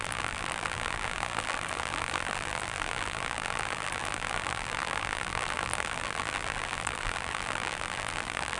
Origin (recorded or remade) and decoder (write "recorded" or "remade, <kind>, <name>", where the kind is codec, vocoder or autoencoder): remade, vocoder, BigVGAN v2